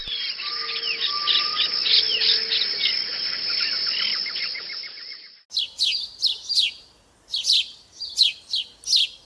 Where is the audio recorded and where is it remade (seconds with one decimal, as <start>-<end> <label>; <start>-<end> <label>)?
0.0-9.3 recorded